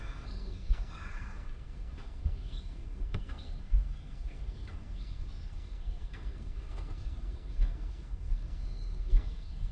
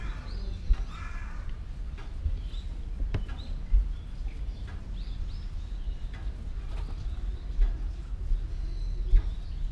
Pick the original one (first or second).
second